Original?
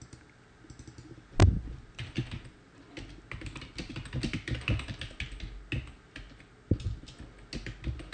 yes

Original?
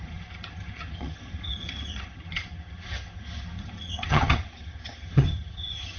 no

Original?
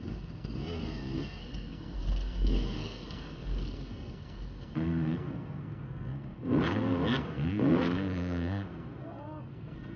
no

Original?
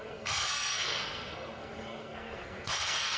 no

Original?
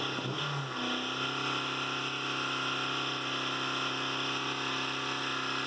yes